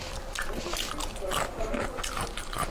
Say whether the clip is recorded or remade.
recorded